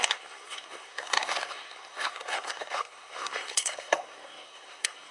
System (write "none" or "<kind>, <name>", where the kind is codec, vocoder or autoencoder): codec, SNAC